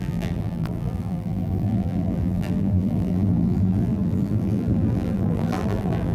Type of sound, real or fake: fake